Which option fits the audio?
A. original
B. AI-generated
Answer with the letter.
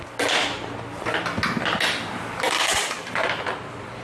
A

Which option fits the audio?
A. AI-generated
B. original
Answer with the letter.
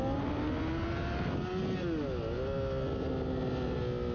B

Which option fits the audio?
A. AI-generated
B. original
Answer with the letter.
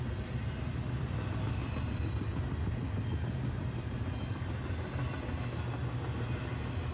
B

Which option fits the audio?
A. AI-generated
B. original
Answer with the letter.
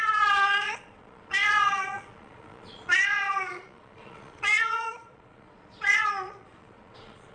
A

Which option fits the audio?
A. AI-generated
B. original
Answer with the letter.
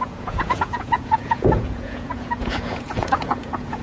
A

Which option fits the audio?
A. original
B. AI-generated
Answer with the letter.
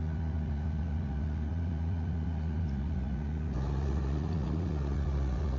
B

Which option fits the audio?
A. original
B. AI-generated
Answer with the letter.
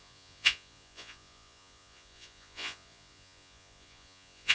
B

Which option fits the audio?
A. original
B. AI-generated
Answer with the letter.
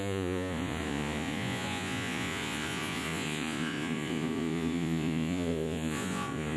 B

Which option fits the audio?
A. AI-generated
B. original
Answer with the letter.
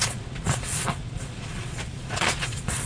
A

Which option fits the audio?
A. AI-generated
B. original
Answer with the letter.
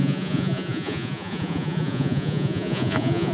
A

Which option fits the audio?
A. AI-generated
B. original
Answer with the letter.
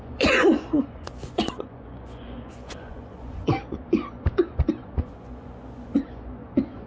A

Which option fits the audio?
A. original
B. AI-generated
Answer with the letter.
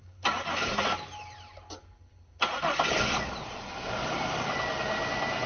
A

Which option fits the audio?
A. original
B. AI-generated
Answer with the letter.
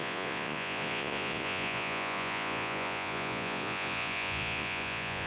B